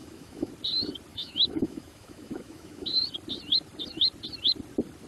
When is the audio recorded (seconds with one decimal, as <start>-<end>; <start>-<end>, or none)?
0.5-1.1; 2.9-5.1